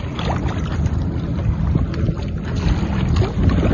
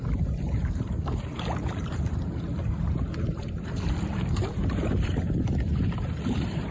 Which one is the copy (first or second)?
second